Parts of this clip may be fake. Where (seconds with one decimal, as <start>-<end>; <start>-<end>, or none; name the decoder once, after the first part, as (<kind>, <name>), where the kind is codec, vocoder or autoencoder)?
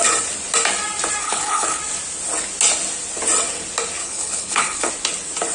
1.2-1.8 (codec, HILCodec); 4.0-4.9